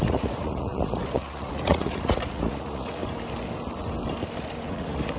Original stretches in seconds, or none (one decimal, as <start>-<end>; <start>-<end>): 3.0-4.7